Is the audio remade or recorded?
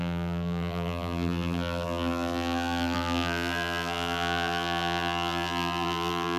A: remade